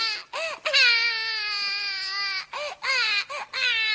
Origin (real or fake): real